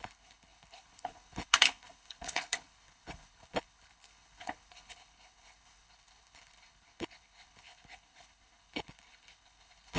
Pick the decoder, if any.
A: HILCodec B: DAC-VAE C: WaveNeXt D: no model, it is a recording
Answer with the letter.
A